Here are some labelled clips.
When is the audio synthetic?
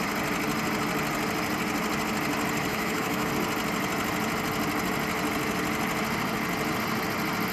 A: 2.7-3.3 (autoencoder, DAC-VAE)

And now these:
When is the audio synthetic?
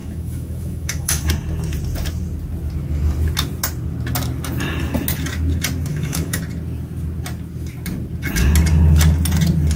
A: 0.0-1.3 (autoencoder, DAC-VAE); 5.9-6.4